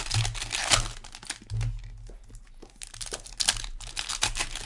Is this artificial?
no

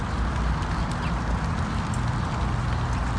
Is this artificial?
no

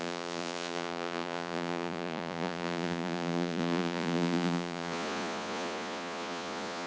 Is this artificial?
yes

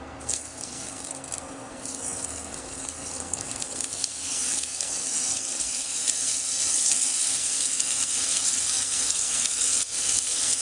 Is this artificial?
yes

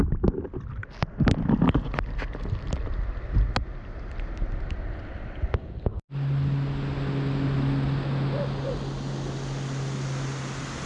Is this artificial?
no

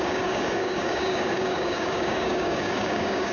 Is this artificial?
yes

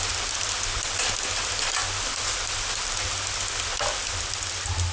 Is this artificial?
no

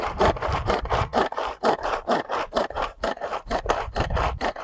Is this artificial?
yes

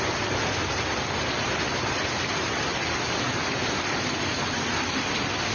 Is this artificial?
no